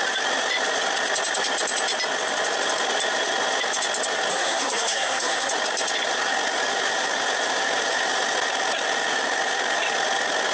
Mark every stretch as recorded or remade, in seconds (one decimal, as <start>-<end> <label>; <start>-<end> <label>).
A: 0.0-4.3 recorded; 4.3-5.5 remade; 5.5-10.5 recorded